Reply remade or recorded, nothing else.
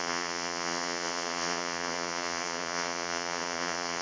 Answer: remade